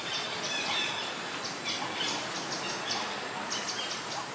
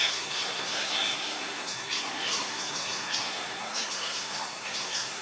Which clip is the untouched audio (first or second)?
first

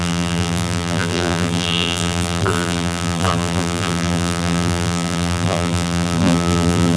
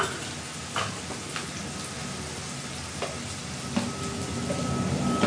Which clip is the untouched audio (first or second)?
second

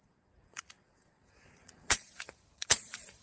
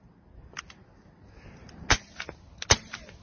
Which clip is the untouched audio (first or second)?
second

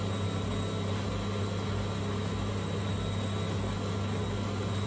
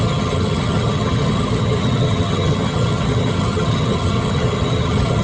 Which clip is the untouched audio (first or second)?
first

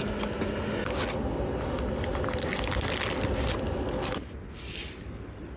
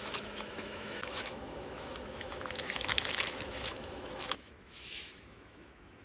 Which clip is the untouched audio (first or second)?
first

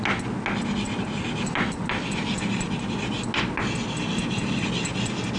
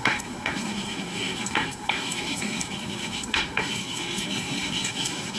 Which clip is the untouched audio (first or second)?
first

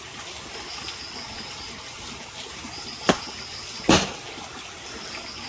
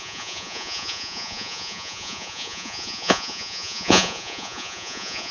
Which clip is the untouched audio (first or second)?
first